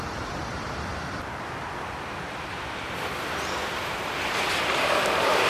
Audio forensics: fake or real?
fake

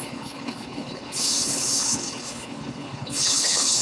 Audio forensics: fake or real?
fake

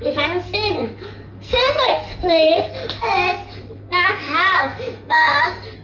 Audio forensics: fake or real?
fake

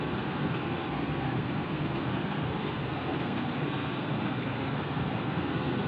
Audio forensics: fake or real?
fake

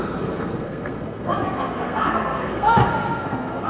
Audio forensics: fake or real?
fake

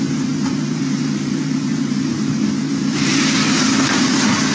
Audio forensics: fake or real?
fake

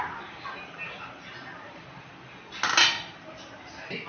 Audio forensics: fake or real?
real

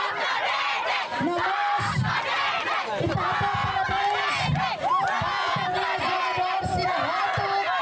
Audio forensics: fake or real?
real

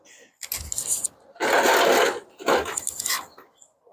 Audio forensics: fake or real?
real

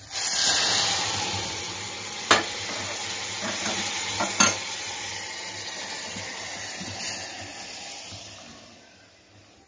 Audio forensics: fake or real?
real